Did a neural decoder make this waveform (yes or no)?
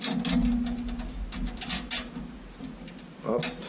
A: no